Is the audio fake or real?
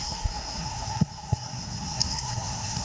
fake